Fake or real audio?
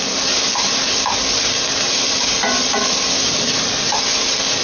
real